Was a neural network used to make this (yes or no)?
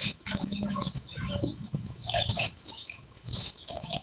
yes